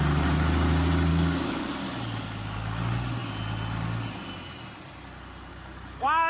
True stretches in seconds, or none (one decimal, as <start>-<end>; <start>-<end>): 0.0-1.1; 2.8-5.5